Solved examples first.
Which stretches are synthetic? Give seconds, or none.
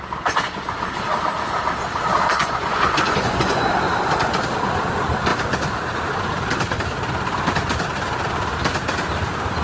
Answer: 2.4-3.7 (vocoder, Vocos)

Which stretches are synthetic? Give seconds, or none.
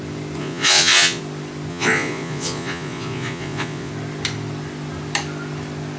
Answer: 0.4-1.2 (vocoder, Vocos); 1.7-3.9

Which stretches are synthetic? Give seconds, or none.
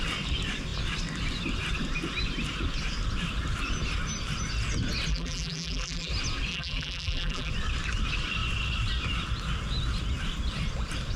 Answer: 5.1-6.1 (vocoder, BigVGAN v2); 6.5-7.5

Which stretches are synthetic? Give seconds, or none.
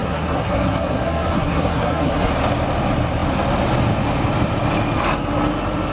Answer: 0.0-2.3 (codec, SNAC)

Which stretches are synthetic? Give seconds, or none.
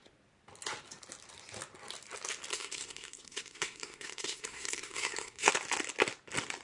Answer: 2.5-5.5 (codec, SNAC)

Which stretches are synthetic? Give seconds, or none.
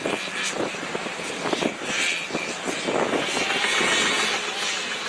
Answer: none